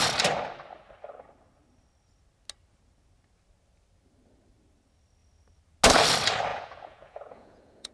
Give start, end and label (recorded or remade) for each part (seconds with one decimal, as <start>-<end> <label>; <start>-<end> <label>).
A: 0.0-6.5 recorded; 6.5-7.9 remade